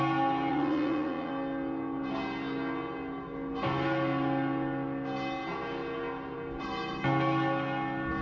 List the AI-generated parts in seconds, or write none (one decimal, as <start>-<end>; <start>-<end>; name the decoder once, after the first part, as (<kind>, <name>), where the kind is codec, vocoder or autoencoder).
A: 0.5-1.3 (vocoder, Vocos)